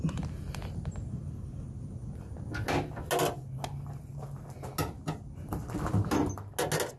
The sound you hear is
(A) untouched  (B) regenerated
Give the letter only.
A